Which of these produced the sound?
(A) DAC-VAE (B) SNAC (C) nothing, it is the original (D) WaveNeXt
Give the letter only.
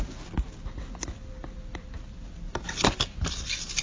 C